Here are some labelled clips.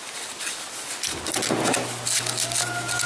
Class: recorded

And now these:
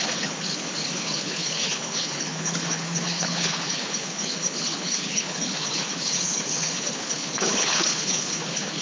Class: remade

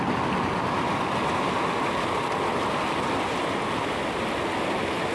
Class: recorded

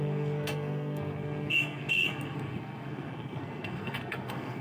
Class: remade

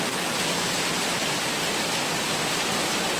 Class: recorded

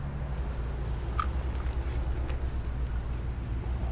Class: recorded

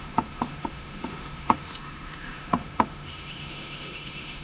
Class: remade